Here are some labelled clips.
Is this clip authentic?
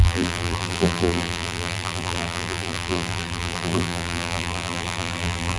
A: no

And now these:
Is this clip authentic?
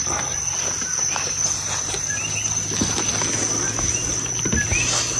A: yes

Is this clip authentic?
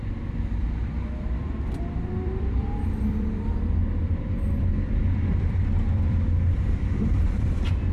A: no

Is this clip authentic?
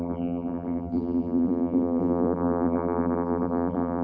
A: no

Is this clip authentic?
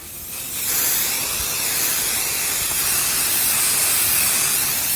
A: yes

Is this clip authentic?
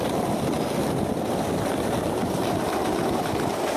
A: yes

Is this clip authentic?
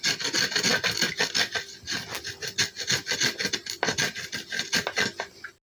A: yes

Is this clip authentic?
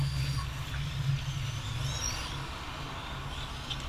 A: yes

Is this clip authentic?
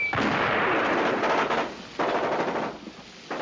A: yes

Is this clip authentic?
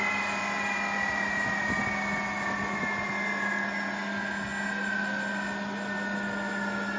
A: yes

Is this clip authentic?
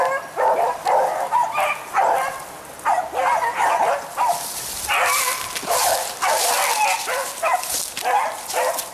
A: yes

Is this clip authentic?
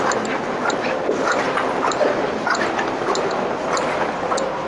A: yes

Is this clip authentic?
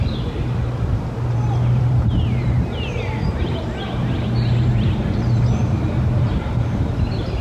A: no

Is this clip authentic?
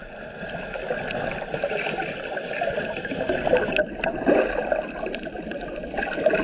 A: yes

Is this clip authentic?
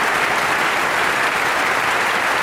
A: no